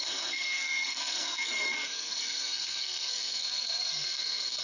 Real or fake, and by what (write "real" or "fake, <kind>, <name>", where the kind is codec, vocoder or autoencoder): fake, codec, SNAC